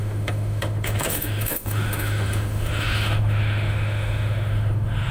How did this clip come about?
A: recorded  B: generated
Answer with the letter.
B